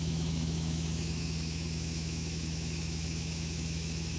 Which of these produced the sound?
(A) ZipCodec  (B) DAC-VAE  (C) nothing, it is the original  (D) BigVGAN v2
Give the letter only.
B